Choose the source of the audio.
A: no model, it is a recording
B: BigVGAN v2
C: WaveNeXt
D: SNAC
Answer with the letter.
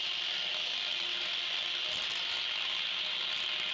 A